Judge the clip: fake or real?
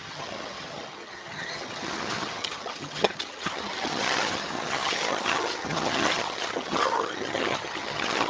fake